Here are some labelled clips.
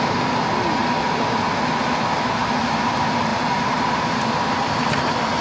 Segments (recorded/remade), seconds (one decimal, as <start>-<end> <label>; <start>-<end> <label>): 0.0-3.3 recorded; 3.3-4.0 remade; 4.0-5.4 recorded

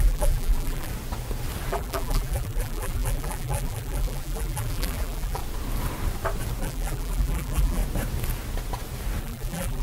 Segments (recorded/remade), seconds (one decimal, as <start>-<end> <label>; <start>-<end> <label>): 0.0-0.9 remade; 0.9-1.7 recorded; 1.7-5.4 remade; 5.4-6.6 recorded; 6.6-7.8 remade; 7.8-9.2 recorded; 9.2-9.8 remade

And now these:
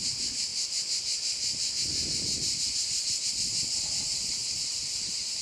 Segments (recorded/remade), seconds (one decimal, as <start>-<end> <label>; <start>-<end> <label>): 0.0-5.4 recorded

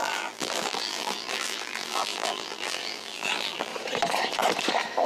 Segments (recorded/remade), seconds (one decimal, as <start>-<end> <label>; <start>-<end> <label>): 0.0-3.7 remade; 3.7-5.1 recorded